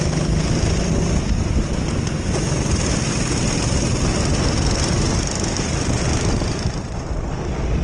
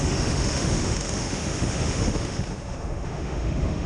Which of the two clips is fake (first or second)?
second